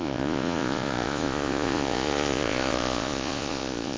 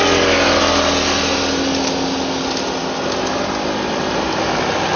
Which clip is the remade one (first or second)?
first